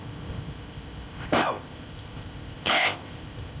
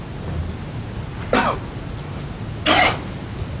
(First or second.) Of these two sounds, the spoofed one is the first